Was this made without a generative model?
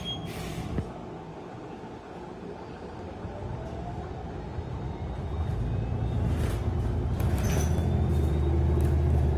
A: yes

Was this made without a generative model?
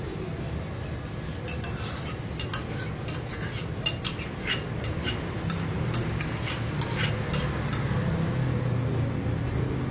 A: yes